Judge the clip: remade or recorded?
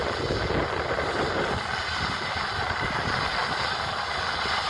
recorded